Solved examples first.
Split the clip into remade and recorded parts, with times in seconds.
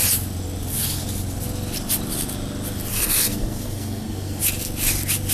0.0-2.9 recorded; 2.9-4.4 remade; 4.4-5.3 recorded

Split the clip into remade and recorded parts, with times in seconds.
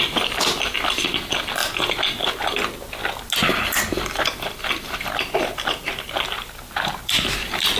0.0-7.8 recorded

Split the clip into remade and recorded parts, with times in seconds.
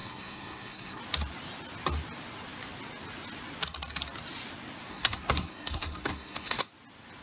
0.0-1.0 remade; 1.0-4.9 recorded; 4.9-6.7 remade; 6.7-7.2 recorded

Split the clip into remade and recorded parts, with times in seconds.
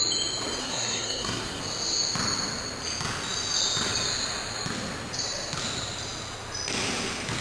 0.0-0.6 recorded; 0.6-1.6 remade; 1.6-7.4 recorded